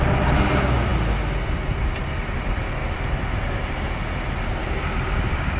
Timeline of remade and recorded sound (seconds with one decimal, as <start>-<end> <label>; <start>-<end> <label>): 0.0-4.6 recorded; 4.6-5.6 remade